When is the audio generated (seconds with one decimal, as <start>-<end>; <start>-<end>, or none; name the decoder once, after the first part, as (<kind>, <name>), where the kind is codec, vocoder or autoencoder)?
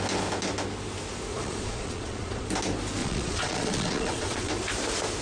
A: 1.3-2.5 (vocoder, Vocos); 3.0-4.5